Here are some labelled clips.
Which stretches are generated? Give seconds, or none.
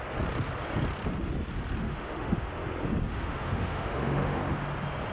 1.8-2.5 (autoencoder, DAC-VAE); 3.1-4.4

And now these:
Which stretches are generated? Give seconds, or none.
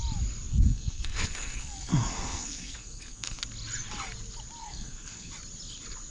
0.5-3.4 (codec, SNAC); 4.6-5.3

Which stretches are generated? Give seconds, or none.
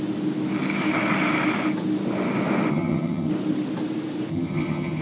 2.7-3.3 (vocoder, HiFi-GAN); 4.3-5.0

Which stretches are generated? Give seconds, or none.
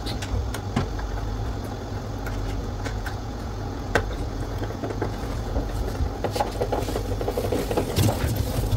2.6-5.9 (vocoder, Vocos)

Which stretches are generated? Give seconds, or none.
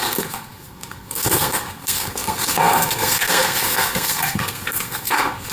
0.0-5.5 (codec, SNAC)